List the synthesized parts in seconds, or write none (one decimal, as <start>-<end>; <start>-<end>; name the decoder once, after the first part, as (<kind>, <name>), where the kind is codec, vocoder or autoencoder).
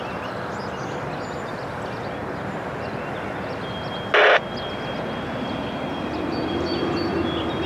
none